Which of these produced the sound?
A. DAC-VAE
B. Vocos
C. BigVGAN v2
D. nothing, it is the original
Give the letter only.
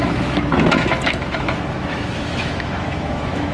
A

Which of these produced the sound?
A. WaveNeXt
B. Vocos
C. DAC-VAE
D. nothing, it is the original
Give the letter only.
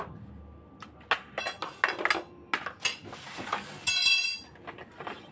D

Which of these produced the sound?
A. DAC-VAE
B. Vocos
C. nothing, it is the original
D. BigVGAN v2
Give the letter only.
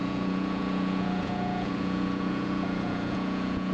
B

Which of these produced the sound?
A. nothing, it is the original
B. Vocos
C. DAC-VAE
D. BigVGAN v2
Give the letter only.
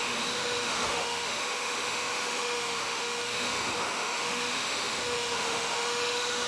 C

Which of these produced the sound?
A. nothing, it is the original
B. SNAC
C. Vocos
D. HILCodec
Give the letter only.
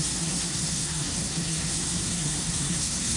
B